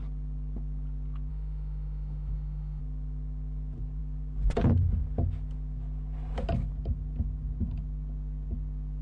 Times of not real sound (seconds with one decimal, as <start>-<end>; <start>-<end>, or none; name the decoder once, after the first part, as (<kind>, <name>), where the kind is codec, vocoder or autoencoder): 1.3-2.8 (autoencoder, DAC-VAE)